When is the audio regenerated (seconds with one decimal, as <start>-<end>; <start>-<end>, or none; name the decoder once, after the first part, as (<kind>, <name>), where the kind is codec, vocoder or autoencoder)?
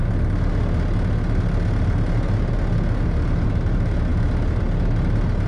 none